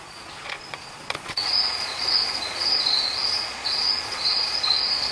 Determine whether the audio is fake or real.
fake